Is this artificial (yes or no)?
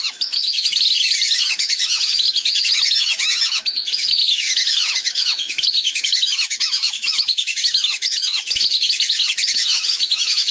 yes